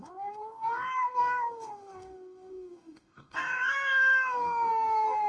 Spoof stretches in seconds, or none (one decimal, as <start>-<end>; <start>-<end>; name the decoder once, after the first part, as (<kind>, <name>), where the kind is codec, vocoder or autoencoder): 0.0-5.3 (codec, DAC)